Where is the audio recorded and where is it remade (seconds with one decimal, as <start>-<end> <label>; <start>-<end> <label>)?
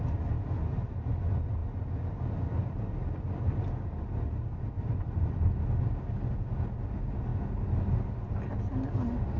0.0-9.4 recorded